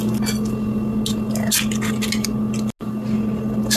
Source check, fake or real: real